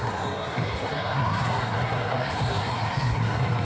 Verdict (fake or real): fake